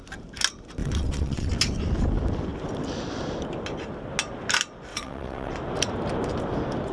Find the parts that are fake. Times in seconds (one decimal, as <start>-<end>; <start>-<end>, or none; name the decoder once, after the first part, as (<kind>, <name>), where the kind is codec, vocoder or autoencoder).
0.8-1.5 (vocoder, WaveNeXt); 4.9-5.5